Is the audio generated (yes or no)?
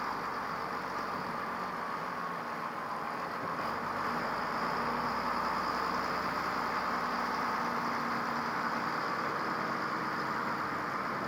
no